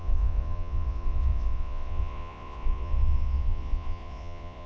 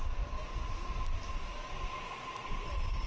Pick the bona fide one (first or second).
second